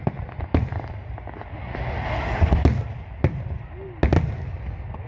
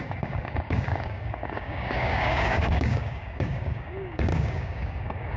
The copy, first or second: second